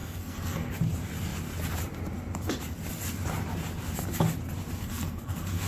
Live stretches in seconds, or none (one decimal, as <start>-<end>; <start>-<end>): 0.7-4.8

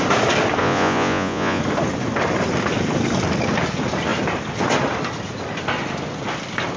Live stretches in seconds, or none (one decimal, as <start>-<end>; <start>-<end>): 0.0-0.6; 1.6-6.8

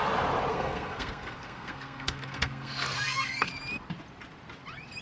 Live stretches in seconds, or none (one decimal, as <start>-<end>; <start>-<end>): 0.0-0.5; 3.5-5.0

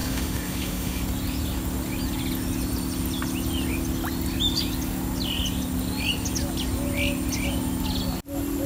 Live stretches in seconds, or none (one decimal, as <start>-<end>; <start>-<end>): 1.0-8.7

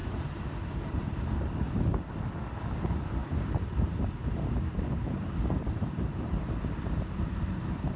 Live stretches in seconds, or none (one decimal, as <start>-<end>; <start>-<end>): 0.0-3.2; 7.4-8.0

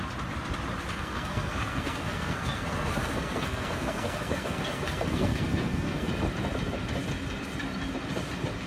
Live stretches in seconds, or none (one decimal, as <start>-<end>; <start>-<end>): 0.0-0.9; 6.1-8.7